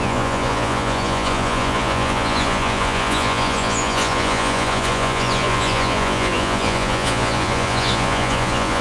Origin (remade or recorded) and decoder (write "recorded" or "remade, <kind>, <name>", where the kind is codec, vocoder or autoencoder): remade, vocoder, Vocos